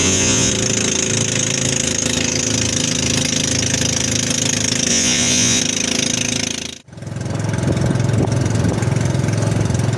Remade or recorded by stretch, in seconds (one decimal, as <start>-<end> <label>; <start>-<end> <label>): 0.0-0.5 remade; 0.5-4.9 recorded; 4.9-5.6 remade; 5.6-10.0 recorded